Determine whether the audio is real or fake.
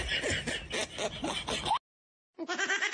real